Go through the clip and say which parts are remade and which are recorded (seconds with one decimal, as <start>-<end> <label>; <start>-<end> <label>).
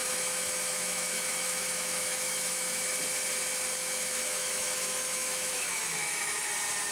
0.0-2.9 remade; 2.9-3.8 recorded; 3.8-6.5 remade; 6.5-6.9 recorded